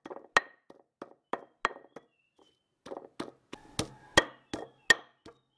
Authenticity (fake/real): real